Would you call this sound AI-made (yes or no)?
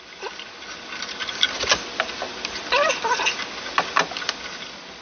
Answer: no